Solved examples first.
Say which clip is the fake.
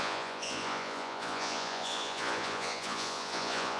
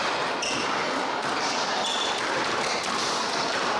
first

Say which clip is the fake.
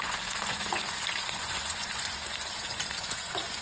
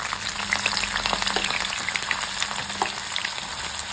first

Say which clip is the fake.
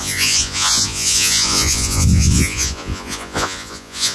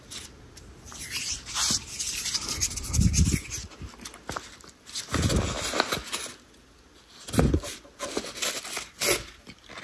first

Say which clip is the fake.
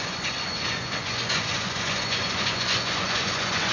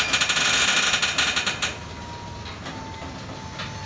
first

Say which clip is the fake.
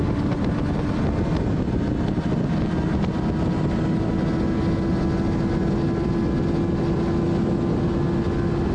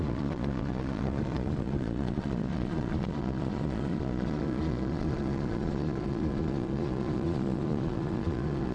second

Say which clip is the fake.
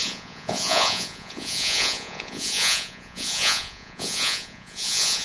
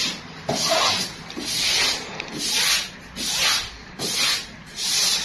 first